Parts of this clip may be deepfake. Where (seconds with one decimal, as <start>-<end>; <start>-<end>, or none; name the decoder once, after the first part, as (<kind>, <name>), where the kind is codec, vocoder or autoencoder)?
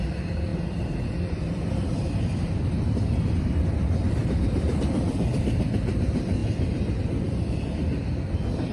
0.0-8.7 (vocoder, BigVGAN v2)